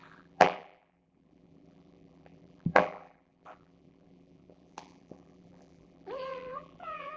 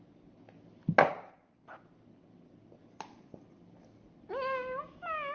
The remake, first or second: first